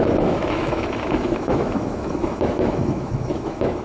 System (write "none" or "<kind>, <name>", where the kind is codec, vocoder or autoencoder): autoencoder, DAC-VAE